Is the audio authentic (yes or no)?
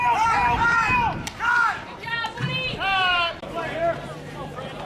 no